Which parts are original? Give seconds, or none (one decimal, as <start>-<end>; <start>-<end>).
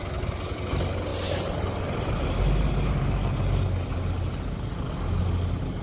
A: 0.0-5.8